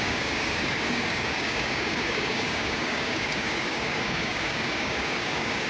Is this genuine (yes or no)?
no